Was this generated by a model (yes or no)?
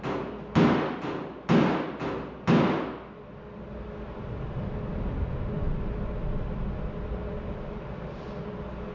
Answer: no